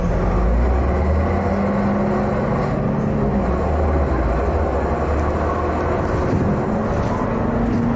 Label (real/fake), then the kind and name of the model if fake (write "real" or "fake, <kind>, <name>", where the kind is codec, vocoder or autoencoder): real